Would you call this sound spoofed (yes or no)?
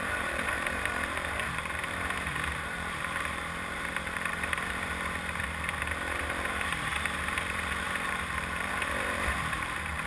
yes